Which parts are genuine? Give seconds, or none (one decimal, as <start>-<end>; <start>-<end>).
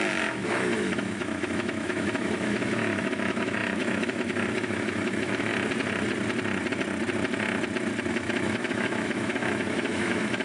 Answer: 5.5-8.1